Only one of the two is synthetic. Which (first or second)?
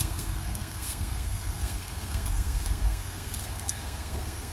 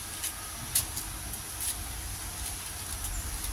first